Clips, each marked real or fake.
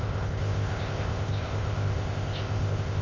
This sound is fake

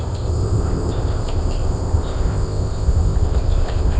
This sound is fake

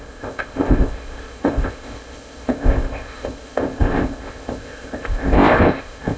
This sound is fake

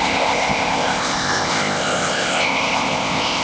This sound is fake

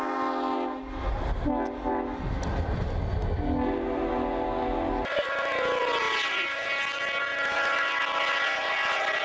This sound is real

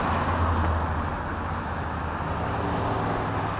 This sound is real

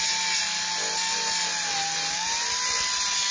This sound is real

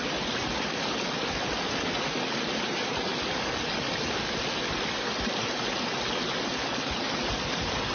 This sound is real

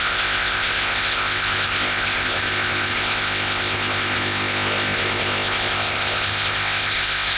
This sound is fake